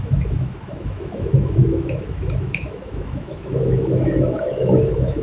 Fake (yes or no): yes